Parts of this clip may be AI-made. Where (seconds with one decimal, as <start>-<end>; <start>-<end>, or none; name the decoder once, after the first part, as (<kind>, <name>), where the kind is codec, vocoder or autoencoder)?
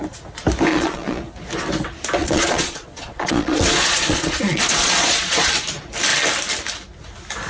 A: 0.7-1.2 (vocoder, Vocos); 2.2-5.5